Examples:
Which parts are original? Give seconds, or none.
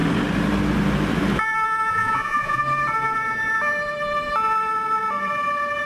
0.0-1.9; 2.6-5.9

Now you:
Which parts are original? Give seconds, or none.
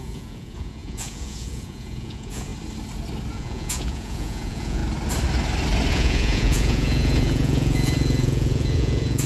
2.5-3.3; 4.8-5.9